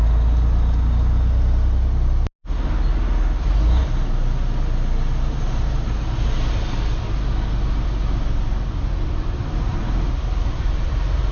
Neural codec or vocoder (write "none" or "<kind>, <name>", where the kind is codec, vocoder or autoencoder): none